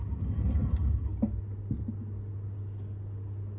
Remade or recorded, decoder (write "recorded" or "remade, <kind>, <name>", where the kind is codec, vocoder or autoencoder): recorded